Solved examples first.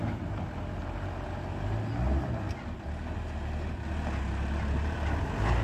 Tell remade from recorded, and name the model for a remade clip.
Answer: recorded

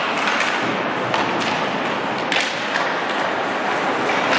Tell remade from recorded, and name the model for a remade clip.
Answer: recorded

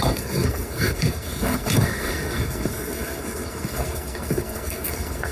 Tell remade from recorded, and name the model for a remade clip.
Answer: remade, codec, SNAC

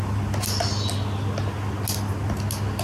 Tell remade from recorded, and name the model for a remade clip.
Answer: recorded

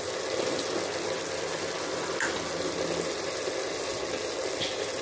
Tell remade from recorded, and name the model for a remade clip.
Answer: recorded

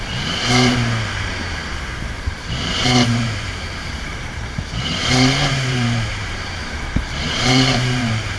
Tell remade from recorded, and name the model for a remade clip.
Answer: remade, vocoder, BigVGAN v2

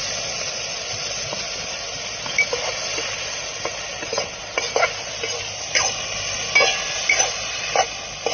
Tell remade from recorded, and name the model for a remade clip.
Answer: recorded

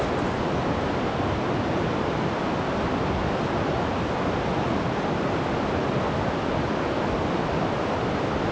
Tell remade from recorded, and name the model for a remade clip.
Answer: recorded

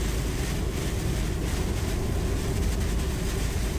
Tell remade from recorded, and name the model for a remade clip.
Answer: recorded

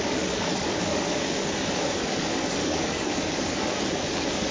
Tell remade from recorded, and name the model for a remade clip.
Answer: remade, codec, DAC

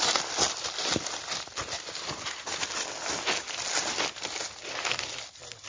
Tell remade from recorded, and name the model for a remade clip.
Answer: recorded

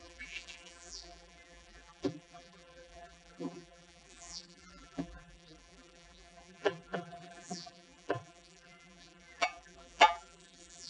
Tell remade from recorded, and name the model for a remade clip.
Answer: remade, vocoder, BigVGAN v2